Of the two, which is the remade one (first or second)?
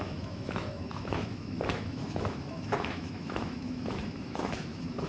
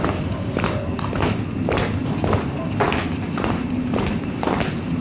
first